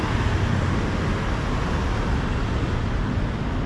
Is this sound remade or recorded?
recorded